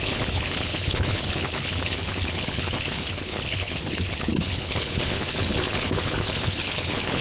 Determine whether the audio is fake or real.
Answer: fake